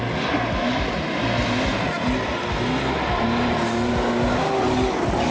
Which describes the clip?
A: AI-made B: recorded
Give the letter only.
B